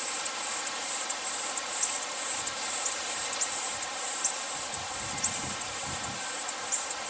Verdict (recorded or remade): remade